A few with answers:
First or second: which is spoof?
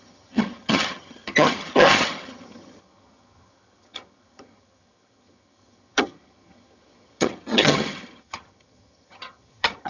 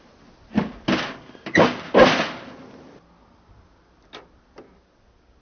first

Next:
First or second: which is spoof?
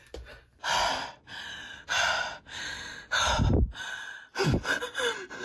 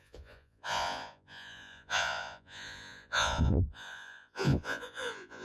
second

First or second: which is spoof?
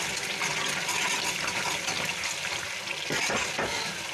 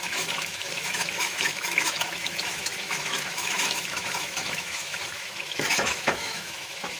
second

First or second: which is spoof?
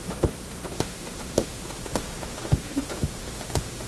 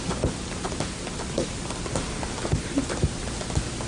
first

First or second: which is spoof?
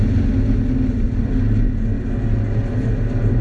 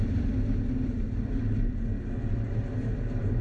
second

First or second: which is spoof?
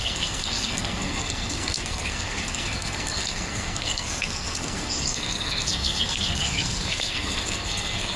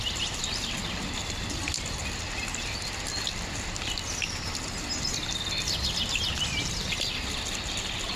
first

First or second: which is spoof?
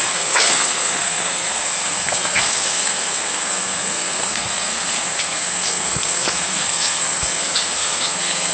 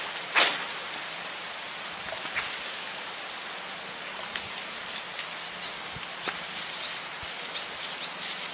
first